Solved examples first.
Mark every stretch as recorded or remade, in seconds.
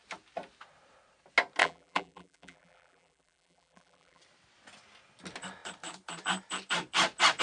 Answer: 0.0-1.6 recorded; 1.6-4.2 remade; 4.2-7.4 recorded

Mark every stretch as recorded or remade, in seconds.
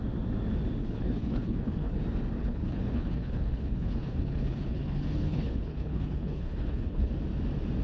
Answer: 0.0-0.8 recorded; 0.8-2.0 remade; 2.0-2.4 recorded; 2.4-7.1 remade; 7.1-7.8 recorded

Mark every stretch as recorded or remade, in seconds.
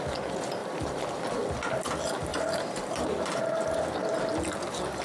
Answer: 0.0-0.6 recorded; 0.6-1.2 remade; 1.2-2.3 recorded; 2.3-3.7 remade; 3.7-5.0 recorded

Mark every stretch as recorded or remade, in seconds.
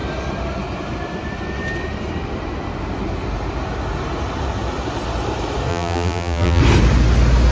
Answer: 0.0-5.7 recorded; 5.7-6.6 remade; 6.6-7.5 recorded